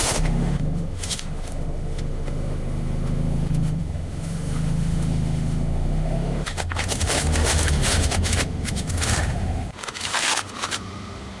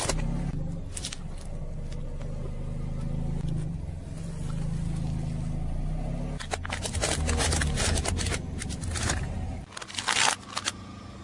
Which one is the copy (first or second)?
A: first